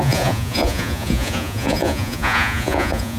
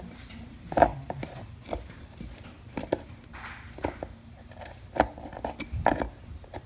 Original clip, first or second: second